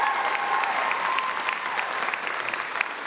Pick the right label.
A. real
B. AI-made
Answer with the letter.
A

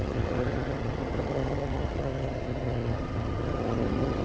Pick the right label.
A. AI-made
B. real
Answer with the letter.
A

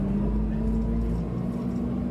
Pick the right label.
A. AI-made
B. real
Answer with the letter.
B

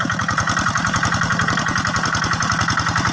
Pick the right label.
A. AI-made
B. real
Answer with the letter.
A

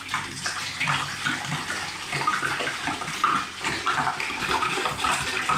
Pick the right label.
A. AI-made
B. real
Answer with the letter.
B